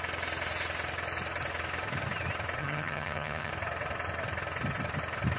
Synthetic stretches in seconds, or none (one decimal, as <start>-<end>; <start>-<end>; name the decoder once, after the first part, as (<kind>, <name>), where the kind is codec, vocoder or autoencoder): 2.6-3.5 (vocoder, HiFi-GAN)